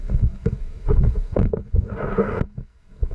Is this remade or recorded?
remade